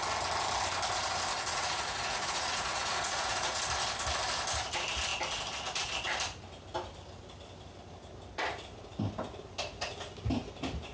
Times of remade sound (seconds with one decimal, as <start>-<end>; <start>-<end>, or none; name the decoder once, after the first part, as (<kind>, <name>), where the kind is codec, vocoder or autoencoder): 1.5-3.6 (vocoder, Vocos)